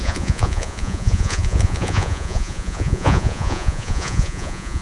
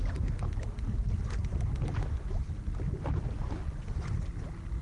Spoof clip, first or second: first